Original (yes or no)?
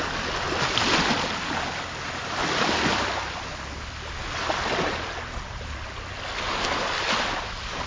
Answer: yes